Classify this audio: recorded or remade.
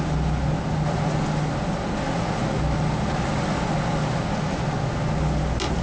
recorded